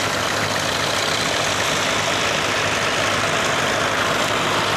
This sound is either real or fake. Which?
real